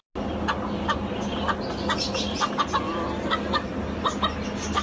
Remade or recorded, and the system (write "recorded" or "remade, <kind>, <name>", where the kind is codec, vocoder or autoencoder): recorded